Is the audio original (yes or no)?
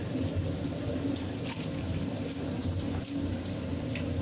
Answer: yes